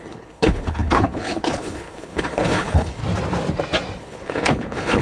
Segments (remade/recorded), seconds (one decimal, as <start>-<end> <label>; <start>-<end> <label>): 0.0-3.0 remade; 3.0-4.0 recorded; 4.0-5.0 remade